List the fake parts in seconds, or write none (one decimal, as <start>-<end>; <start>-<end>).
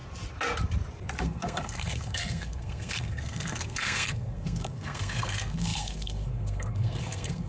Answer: 1.2-7.5